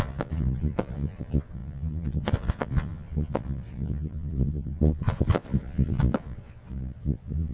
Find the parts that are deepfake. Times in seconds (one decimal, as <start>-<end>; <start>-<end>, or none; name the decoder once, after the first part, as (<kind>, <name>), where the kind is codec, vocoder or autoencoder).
0.0-7.5 (vocoder, Vocos)